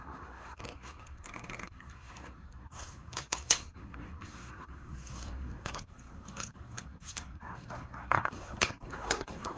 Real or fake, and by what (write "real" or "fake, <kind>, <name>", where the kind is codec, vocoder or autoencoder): fake, codec, SNAC